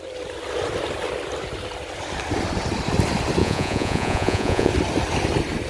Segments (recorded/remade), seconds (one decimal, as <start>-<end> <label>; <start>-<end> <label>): 0.0-3.4 recorded; 3.4-4.7 remade; 4.7-5.7 recorded